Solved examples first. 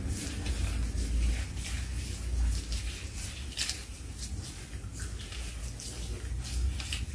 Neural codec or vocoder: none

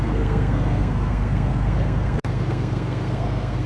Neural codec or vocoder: codec, SNAC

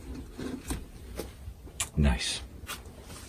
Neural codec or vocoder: none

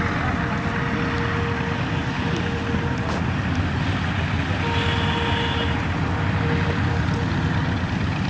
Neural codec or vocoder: none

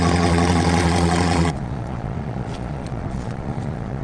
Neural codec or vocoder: vocoder, Vocos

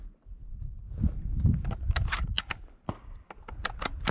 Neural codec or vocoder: none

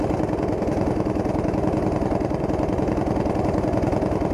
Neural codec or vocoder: none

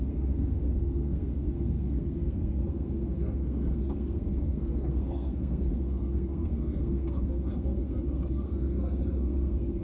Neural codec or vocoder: codec, SNAC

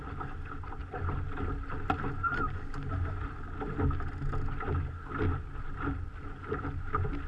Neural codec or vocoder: none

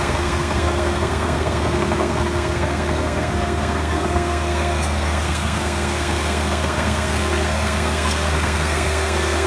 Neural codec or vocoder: codec, SNAC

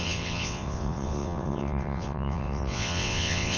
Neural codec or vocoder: vocoder, WaveNeXt